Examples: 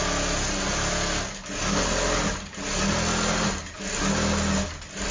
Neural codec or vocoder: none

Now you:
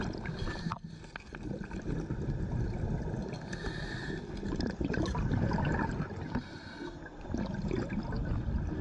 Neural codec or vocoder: none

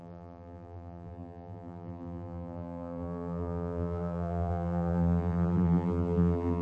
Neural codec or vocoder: vocoder, BigVGAN v2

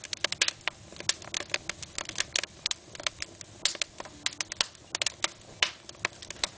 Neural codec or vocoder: none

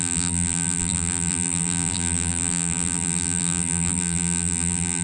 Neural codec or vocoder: vocoder, BigVGAN v2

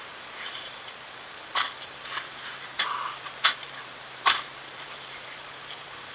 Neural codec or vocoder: vocoder, BigVGAN v2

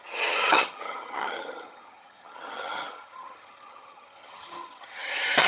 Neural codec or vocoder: vocoder, HiFi-GAN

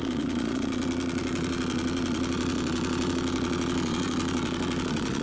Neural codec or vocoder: vocoder, Vocos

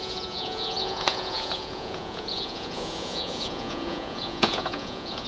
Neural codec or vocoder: vocoder, Vocos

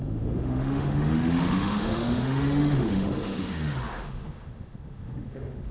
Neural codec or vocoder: autoencoder, DAC-VAE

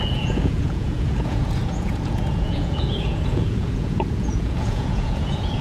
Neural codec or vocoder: vocoder, Vocos